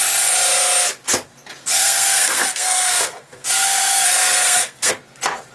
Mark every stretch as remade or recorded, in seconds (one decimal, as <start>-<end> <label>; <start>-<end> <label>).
0.0-1.6 recorded; 1.6-4.9 remade; 4.9-5.5 recorded